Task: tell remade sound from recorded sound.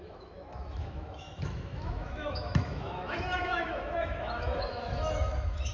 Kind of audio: remade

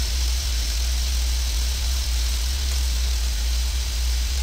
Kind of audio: remade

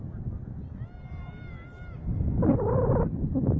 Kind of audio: recorded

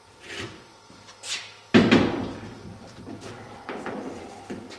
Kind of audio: recorded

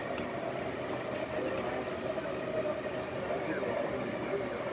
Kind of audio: recorded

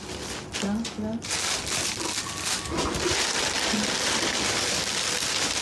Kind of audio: recorded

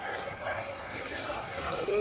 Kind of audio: remade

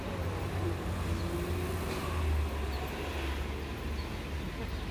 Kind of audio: recorded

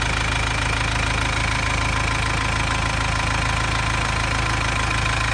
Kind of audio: recorded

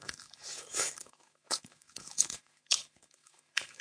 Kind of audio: remade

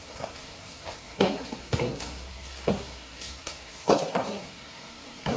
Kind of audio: remade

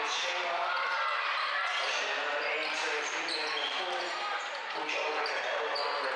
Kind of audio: recorded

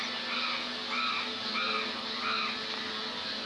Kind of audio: recorded